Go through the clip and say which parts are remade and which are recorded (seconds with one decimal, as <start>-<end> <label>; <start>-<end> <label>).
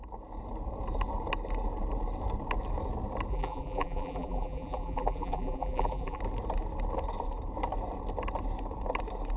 0.0-3.3 recorded; 3.3-6.2 remade; 6.2-9.4 recorded